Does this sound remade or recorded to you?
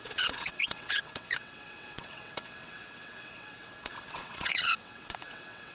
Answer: remade